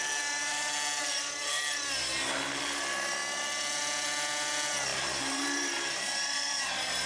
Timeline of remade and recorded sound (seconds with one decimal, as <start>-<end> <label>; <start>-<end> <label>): 0.0-4.9 recorded; 4.9-7.1 remade